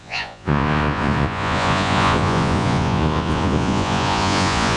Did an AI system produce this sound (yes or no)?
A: yes